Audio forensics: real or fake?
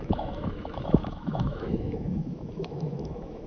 fake